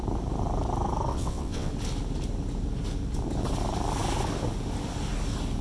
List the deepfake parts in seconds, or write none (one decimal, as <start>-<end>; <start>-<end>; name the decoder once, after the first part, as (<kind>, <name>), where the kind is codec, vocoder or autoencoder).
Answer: 1.1-1.7 (vocoder, WaveNeXt)